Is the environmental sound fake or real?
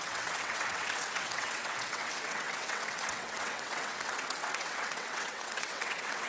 fake